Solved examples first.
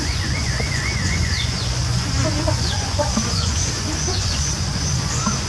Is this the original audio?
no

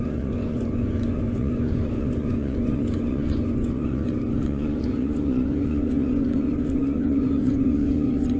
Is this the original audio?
no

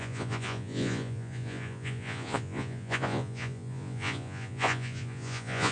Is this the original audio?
no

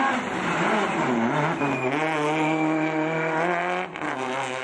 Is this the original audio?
yes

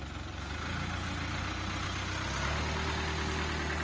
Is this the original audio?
yes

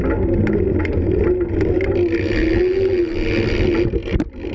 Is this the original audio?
yes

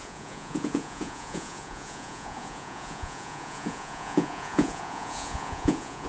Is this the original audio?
no